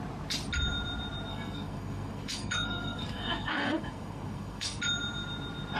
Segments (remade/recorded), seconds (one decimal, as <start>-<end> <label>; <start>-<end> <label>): 0.0-1.3 recorded; 1.3-4.8 remade; 4.8-5.8 recorded